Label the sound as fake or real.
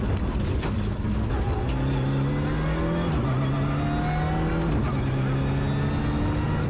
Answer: real